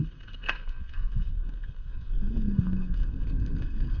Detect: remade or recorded remade